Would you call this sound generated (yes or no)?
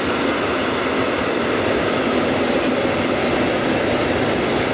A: no